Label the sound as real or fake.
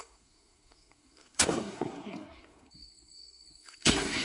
fake